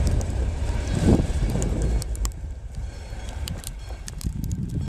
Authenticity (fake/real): fake